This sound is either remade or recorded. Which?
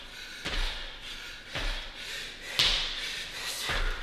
recorded